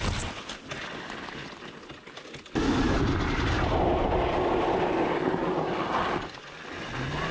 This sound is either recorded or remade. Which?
recorded